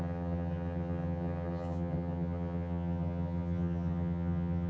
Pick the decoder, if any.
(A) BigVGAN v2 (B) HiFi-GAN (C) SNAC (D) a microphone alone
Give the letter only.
B